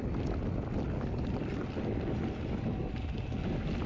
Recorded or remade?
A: recorded